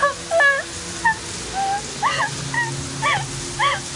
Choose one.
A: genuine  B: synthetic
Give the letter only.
A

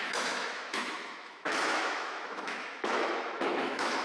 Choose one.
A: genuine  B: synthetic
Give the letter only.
B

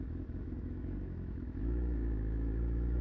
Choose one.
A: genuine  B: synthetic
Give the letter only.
B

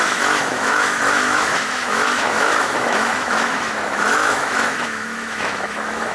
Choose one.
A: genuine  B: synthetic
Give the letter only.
B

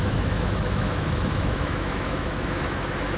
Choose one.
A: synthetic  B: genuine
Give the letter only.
A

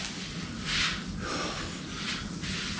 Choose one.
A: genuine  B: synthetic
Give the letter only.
A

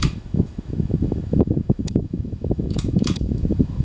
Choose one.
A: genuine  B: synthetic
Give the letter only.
B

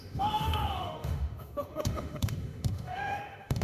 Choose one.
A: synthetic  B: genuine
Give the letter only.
A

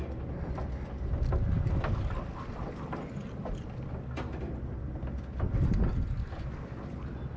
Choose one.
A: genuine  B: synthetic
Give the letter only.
A